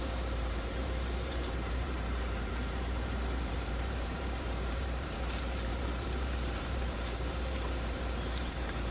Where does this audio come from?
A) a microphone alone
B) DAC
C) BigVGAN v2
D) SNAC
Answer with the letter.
C